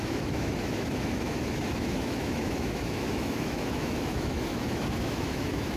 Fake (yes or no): yes